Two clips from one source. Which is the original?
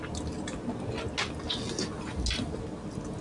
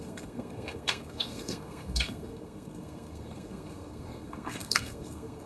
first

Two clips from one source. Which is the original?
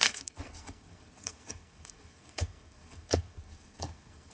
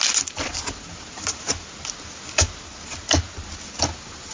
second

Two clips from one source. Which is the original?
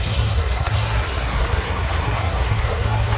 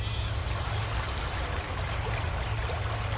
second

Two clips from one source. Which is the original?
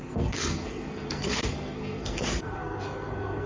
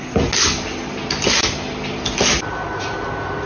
second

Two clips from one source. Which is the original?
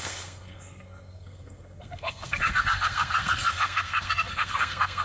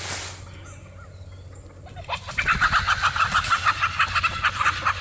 second